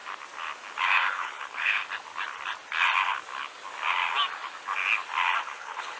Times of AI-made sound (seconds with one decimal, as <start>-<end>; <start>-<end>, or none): 1.1-1.8; 5.4-6.0